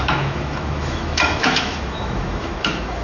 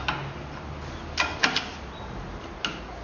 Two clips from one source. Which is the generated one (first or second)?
first